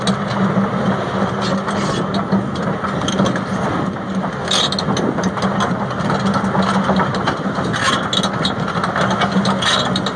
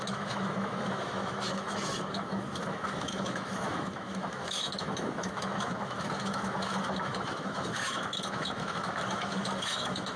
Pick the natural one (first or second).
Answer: first